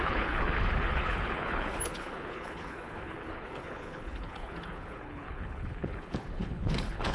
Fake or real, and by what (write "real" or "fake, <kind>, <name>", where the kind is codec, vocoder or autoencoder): fake, codec, HILCodec